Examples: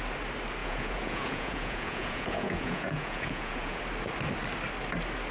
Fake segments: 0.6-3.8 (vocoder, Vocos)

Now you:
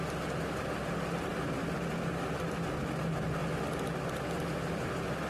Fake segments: none

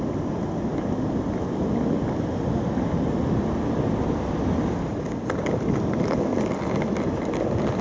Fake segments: none